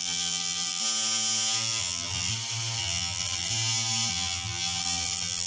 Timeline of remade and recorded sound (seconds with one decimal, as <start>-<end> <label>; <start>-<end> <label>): 0.0-0.8 remade; 0.8-1.8 recorded; 1.8-2.3 remade; 2.3-2.8 recorded; 2.8-3.5 remade; 3.5-4.1 recorded; 4.1-5.5 remade

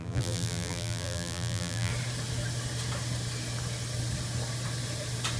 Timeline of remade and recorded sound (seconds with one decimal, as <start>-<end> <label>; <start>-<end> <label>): 0.0-1.9 remade; 1.9-5.4 recorded

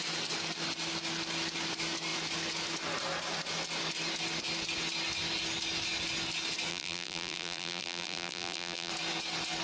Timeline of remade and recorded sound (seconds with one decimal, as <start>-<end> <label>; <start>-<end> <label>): 0.0-6.7 recorded; 6.7-8.9 remade; 8.9-9.6 recorded

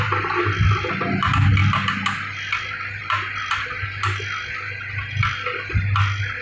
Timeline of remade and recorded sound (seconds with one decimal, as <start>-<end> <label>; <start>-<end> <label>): 0.0-6.4 recorded

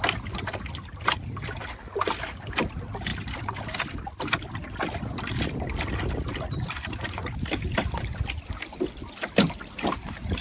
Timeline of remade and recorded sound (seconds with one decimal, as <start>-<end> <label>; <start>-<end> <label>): 0.0-3.1 recorded; 3.1-8.2 remade; 8.2-10.4 recorded